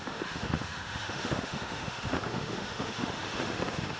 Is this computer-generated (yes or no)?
yes